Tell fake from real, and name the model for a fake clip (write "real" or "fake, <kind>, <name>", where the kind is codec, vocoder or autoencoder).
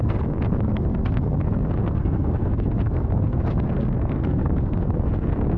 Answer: fake, codec, SNAC